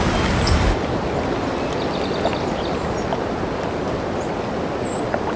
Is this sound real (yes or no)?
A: yes